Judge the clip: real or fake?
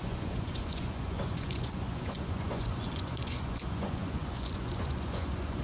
fake